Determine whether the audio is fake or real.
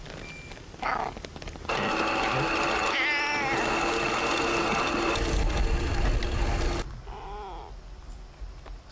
real